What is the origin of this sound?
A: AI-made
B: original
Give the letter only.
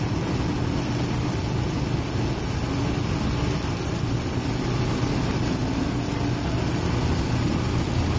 B